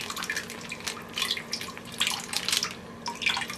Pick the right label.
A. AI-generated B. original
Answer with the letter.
B